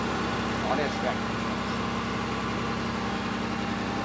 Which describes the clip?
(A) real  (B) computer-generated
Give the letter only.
A